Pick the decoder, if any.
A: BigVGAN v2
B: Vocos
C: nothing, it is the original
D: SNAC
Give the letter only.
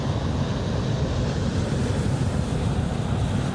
C